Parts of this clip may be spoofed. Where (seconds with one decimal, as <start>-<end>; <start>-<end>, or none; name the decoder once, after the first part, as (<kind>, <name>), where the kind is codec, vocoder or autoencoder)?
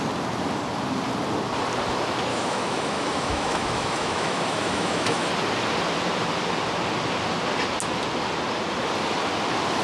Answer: 2.3-5.3 (autoencoder, DAC-VAE)